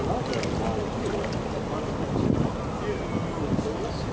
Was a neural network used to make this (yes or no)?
no